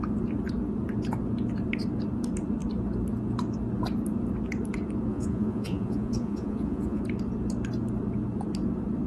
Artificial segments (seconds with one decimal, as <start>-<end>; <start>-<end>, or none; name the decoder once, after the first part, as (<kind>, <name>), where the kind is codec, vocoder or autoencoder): 5.1-7.0 (vocoder, Vocos)